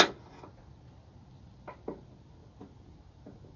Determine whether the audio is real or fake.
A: real